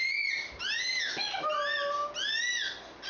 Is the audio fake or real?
real